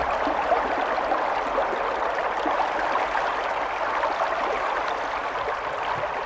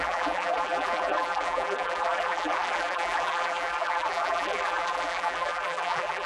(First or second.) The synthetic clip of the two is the second